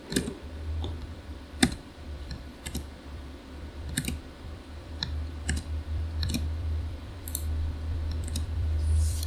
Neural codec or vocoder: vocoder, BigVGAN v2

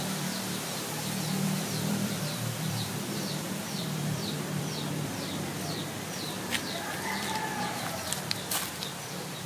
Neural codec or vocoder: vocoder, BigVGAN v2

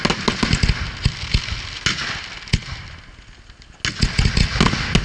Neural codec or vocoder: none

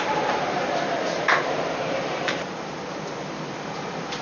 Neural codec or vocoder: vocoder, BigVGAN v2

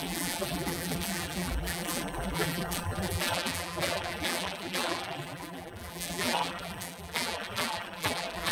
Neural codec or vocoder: vocoder, BigVGAN v2